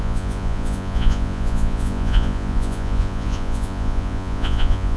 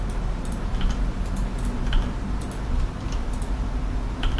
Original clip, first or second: second